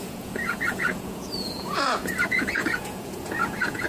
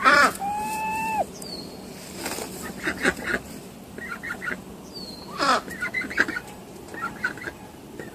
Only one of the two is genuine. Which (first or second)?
second